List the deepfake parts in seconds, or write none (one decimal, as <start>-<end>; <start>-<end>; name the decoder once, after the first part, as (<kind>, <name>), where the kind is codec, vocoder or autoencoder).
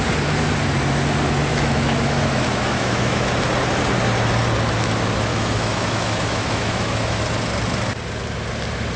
1.5-3.3 (autoencoder, DAC-VAE); 5.3-7.2